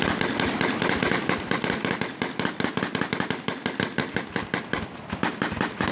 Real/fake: real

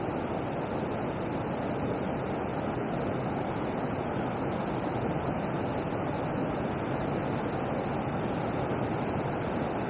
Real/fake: real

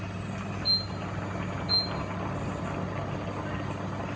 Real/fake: real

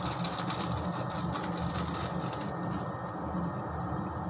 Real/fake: real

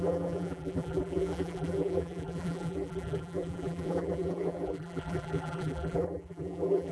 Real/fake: fake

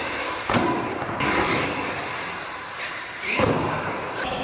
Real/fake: real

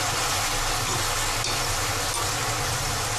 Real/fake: real